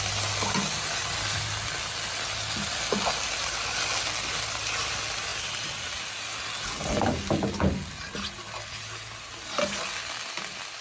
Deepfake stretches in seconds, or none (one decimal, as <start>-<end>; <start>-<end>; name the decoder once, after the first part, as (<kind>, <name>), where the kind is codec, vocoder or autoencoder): none